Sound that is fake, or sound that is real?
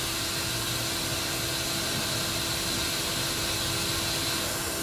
real